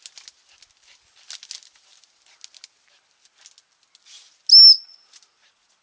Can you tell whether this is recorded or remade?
recorded